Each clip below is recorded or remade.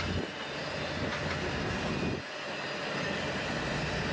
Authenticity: recorded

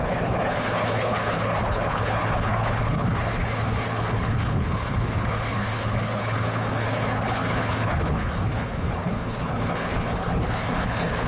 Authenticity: remade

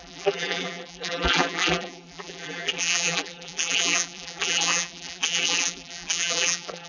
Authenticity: remade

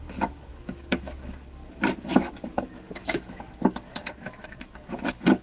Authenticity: remade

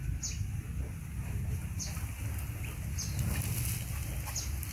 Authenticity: recorded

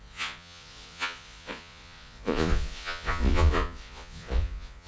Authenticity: remade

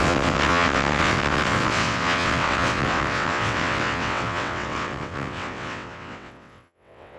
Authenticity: remade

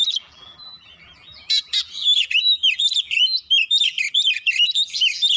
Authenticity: remade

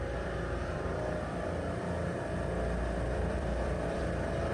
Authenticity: remade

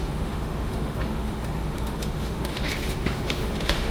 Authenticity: remade